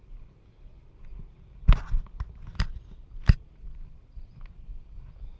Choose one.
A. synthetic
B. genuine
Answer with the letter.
B